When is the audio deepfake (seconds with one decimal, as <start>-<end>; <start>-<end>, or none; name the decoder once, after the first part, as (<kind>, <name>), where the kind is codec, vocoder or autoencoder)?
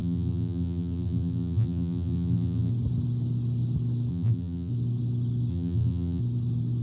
0.0-2.7 (vocoder, BigVGAN v2); 4.1-4.7; 5.5-6.2